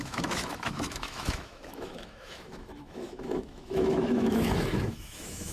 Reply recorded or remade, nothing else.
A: remade